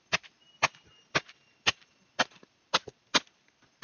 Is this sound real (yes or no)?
yes